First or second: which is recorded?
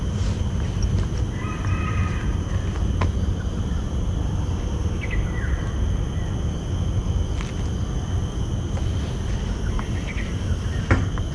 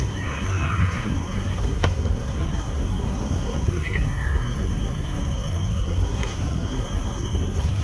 first